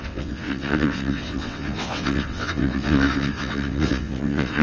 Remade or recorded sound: remade